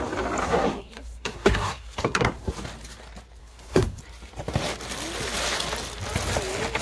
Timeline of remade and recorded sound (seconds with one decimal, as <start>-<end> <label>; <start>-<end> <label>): 0.0-0.4 recorded; 0.4-2.5 remade; 2.5-3.4 recorded; 3.4-4.0 remade; 4.0-6.8 recorded